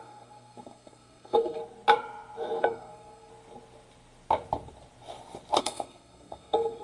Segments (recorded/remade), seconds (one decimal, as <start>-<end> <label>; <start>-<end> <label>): 0.0-1.6 remade; 1.6-2.6 recorded; 2.6-3.3 remade; 3.3-5.6 recorded; 5.6-6.8 remade